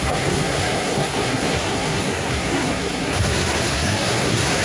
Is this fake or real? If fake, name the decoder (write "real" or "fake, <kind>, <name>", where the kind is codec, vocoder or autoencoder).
fake, codec, SNAC